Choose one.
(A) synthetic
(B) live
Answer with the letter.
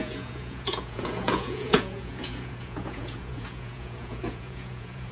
A